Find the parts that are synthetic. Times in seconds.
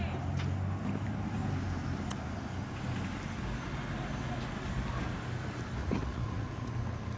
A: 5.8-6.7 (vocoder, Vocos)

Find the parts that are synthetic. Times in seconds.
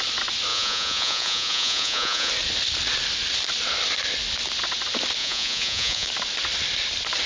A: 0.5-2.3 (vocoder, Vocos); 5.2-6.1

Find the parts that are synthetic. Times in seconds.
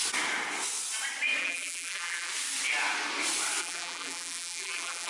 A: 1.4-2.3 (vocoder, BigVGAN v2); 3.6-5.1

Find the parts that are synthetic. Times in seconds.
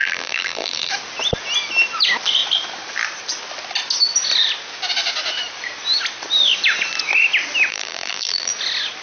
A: 0.0-0.9 (vocoder, BigVGAN v2); 7.7-8.5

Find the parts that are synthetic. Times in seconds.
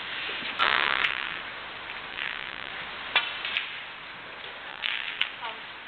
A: 0.6-1.4 (vocoder, WaveNeXt); 2.1-2.7; 4.7-5.3